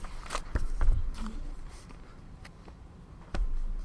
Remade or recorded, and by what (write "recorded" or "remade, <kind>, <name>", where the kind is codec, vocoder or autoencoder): remade, vocoder, BigVGAN v2